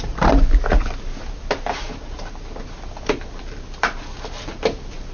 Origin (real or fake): real